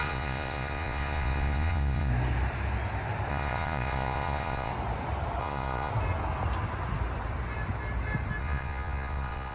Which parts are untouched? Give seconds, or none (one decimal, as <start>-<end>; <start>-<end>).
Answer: 2.1-3.3; 4.7-5.4; 5.9-8.4